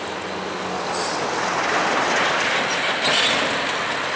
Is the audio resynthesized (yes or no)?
no